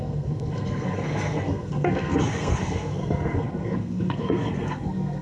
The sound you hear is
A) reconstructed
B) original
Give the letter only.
A